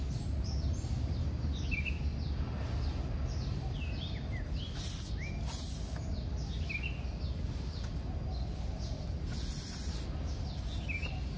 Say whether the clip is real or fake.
real